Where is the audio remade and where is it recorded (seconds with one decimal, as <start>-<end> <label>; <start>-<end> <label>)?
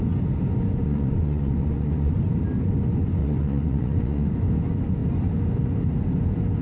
0.0-0.8 recorded; 0.8-2.1 remade; 2.1-3.2 recorded; 3.2-4.3 remade; 4.3-6.6 recorded